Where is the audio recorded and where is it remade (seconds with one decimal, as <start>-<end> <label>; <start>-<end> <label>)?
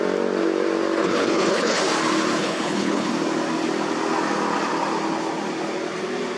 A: 0.0-1.0 recorded; 1.0-1.8 remade; 1.8-2.4 recorded; 2.4-3.1 remade; 3.1-6.4 recorded